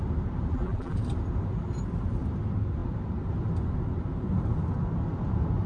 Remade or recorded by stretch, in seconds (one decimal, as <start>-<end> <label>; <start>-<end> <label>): 0.0-0.5 recorded; 0.5-1.0 remade; 1.0-5.7 recorded